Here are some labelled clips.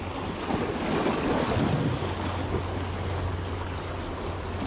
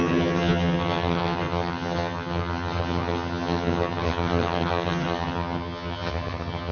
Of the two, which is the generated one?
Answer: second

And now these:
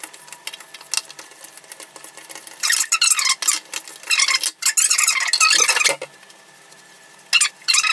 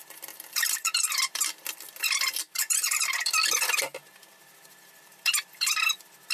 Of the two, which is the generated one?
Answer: second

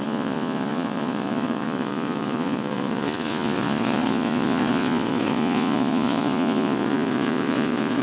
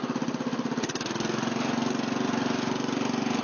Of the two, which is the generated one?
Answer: first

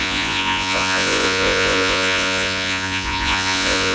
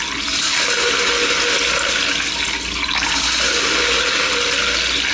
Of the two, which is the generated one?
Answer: first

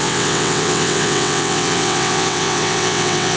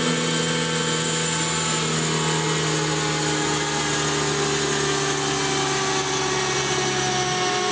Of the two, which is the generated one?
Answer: first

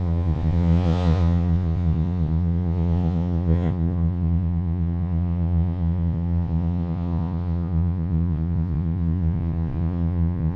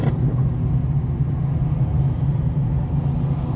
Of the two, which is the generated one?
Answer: first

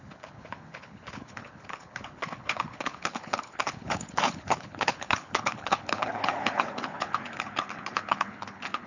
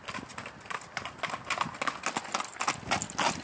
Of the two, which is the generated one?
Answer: first